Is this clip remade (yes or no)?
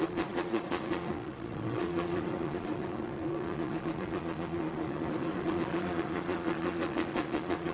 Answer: yes